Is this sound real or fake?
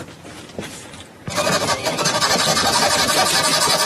real